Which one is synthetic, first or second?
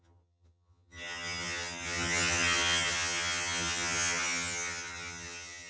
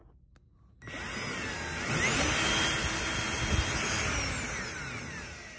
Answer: first